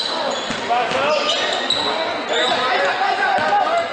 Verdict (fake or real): real